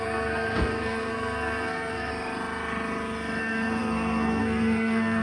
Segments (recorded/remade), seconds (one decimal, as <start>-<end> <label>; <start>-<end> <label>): 0.0-2.1 remade; 2.1-3.4 recorded; 3.4-5.2 remade

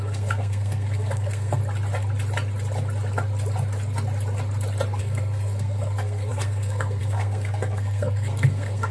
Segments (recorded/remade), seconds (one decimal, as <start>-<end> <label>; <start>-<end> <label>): 0.0-1.6 remade; 1.6-5.0 recorded; 5.0-8.9 remade

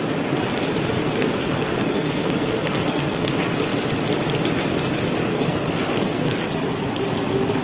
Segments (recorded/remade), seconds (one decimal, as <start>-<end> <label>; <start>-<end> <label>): 0.0-1.0 recorded; 1.0-3.3 remade; 3.3-5.3 recorded; 5.3-6.5 remade; 6.5-7.6 recorded

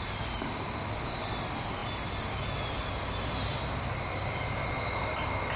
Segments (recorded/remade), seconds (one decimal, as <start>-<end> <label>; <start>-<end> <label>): 0.0-5.6 recorded